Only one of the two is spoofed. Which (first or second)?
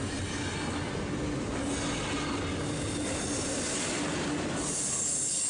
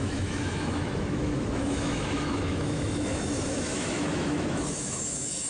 second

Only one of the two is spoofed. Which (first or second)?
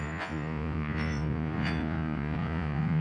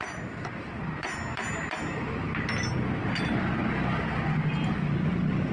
first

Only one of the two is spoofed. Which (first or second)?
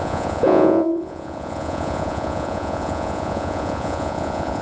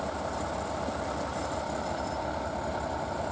first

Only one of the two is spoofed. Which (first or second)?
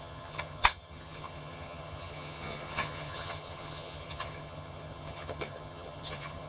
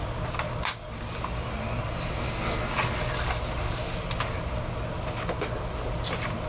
first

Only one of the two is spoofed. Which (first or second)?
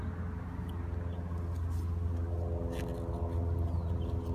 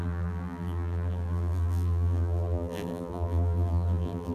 second